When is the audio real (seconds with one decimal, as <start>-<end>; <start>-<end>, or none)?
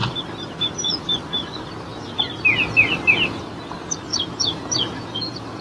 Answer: 0.0-4.1